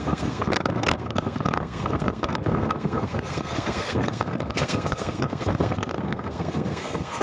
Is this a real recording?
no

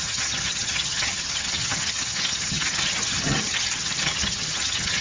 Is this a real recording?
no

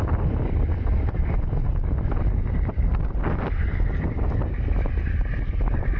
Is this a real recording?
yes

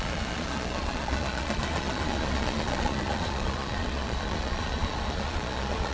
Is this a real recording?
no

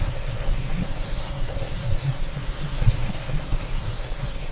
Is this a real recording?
no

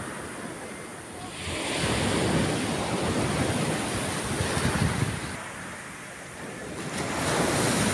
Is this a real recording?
yes